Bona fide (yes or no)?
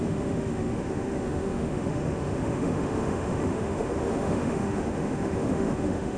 no